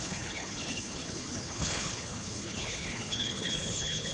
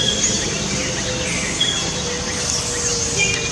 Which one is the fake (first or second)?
first